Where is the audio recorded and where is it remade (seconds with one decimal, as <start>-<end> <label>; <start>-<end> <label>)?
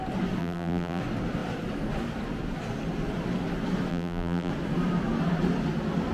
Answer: 0.0-0.4 recorded; 0.4-1.0 remade; 1.0-3.9 recorded; 3.9-4.5 remade; 4.5-6.1 recorded